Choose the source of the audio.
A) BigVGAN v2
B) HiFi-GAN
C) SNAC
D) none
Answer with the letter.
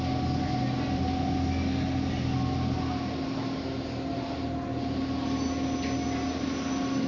D